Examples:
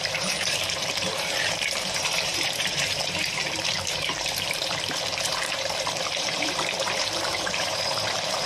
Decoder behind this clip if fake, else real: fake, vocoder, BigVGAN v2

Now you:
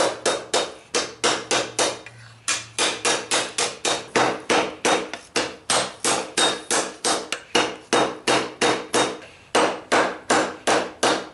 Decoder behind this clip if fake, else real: real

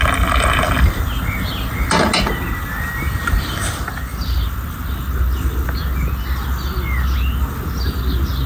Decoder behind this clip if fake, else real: real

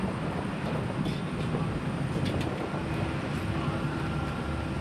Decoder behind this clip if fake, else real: real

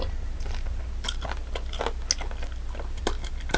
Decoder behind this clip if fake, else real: real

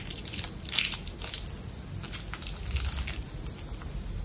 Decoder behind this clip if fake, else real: real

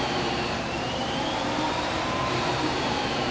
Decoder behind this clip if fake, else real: fake, vocoder, BigVGAN v2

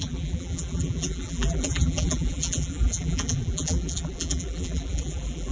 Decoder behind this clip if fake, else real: fake, vocoder, BigVGAN v2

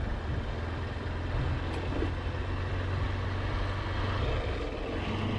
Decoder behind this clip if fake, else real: real